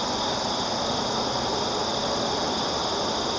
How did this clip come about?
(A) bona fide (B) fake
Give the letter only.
A